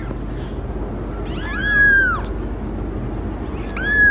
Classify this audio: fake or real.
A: real